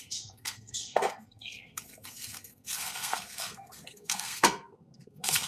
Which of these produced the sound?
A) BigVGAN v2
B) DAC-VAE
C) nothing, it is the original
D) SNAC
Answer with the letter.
D